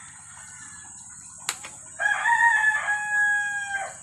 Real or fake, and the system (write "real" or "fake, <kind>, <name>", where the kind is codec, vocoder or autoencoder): real